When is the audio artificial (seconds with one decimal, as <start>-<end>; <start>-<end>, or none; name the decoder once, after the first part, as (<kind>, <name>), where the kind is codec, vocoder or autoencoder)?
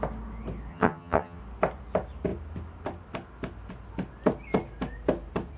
0.7-1.4 (vocoder, HiFi-GAN)